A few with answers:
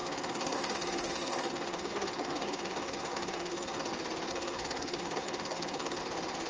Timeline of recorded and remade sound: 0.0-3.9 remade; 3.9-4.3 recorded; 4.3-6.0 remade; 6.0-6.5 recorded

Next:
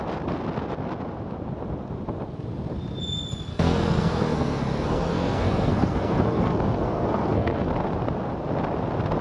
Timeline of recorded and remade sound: 0.0-3.5 recorded; 3.5-7.7 remade; 7.7-9.2 recorded

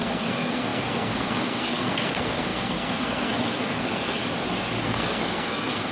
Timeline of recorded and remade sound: 0.0-4.2 remade; 4.2-4.8 recorded; 4.8-5.9 remade